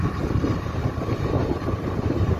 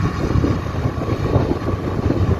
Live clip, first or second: second